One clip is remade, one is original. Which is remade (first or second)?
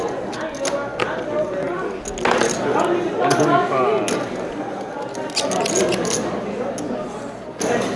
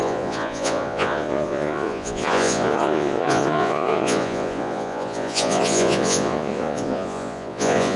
second